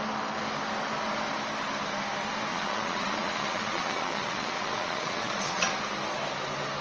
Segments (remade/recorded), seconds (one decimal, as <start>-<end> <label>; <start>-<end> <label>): 0.0-2.5 recorded; 2.5-5.7 remade; 5.7-6.8 recorded